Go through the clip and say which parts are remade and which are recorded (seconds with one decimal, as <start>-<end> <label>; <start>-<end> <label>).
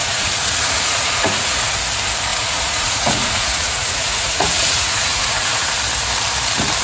0.0-1.8 remade; 1.8-2.3 recorded; 2.3-5.7 remade; 5.7-6.8 recorded